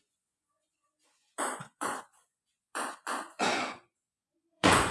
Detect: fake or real fake